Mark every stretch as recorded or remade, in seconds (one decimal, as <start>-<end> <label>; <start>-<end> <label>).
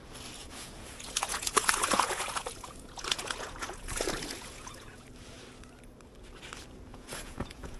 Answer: 0.0-0.4 recorded; 0.4-5.1 remade; 5.1-6.9 recorded; 6.9-7.8 remade